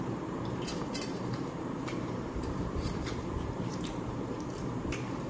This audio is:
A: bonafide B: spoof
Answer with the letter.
B